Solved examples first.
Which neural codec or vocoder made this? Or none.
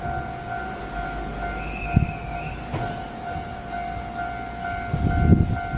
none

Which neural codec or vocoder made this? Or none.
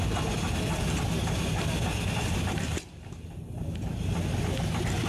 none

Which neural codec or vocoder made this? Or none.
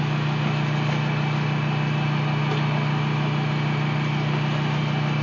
none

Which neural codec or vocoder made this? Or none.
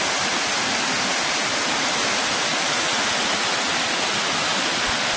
none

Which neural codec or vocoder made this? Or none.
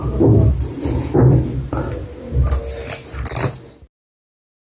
none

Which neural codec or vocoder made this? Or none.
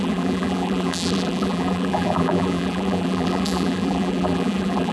vocoder, BigVGAN v2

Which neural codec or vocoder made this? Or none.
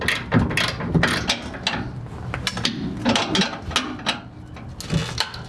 none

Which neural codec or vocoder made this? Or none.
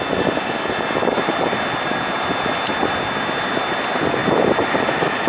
none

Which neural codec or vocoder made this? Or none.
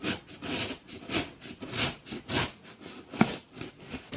none